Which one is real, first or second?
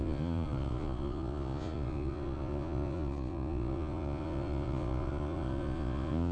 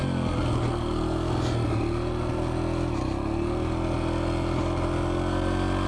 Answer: second